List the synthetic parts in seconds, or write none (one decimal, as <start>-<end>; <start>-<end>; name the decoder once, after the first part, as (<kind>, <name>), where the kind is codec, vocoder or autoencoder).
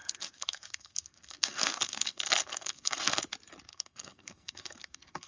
0.0-3.2 (codec, SNAC); 3.7-5.3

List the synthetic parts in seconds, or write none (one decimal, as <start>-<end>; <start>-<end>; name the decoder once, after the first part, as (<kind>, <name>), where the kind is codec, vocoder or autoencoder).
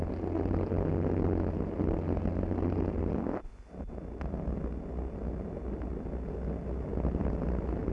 none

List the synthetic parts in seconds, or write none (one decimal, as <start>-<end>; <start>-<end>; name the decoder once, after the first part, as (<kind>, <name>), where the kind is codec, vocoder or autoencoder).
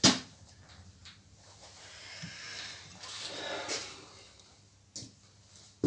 none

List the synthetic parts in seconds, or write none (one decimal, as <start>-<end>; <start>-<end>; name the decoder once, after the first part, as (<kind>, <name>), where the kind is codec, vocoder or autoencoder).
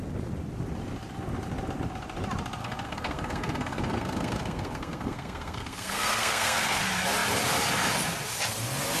2.6-6.8 (codec, SNAC)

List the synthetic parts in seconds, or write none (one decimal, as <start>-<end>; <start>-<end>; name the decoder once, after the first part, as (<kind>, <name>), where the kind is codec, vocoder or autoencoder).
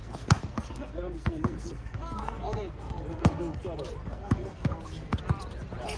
0.0-3.6 (codec, SNAC); 4.0-5.2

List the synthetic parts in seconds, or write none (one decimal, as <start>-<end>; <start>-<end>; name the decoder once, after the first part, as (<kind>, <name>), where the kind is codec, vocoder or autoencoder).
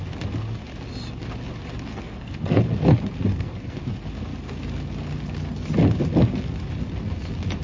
1.9-2.7 (codec, SNAC); 3.3-3.9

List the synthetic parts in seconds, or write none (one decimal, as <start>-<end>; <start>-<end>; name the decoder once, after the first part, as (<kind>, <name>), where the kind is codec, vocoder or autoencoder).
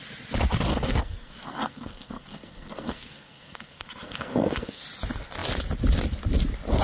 0.7-4.8 (codec, SNAC)